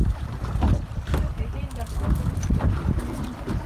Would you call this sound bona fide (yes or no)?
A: yes